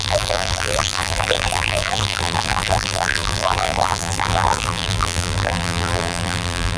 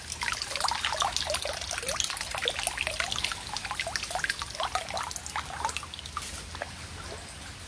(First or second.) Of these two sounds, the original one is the second